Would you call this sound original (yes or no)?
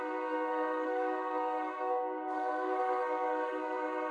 no